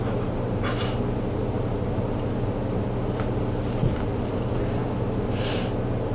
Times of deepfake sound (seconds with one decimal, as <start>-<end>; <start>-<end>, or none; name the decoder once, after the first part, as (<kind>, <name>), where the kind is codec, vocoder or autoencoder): none